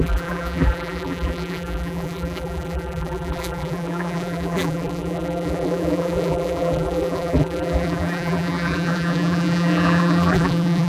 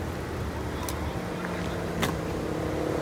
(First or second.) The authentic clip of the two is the second